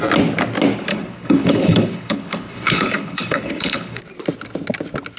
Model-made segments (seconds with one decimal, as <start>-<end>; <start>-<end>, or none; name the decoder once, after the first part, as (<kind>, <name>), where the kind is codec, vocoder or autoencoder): 0.9-4.0 (codec, HILCodec)